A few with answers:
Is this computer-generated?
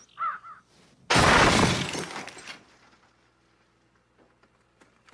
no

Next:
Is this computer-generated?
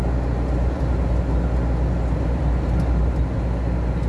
no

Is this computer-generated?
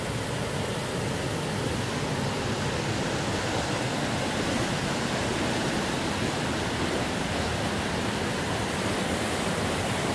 no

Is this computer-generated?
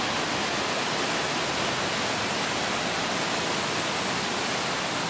no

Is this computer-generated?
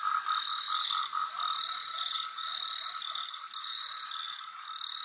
no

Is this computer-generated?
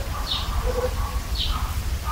no